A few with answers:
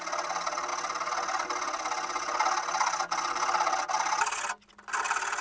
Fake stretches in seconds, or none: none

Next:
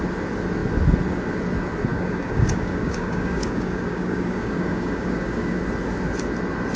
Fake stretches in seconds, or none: 1.9-5.6 (codec, DAC)

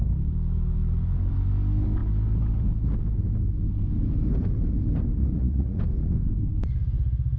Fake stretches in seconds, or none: 5.2-5.8 (vocoder, Vocos)

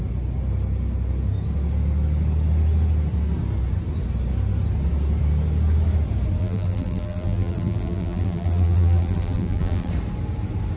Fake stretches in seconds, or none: 6.4-9.9 (vocoder, BigVGAN v2)